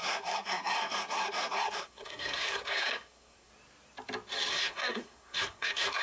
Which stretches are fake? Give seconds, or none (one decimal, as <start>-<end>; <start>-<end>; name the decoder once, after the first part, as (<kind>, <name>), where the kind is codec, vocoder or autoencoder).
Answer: 0.0-3.5 (codec, SNAC); 4.5-6.0